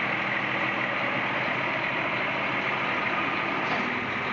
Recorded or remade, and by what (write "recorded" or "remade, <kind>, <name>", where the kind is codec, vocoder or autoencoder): recorded